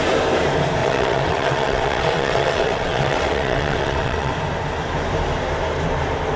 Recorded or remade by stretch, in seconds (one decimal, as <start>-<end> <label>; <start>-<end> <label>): 0.0-0.8 recorded; 0.8-4.3 remade; 4.3-6.4 recorded